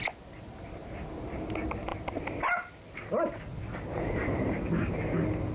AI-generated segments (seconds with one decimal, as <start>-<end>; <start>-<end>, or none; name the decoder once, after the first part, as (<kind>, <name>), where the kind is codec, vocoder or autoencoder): none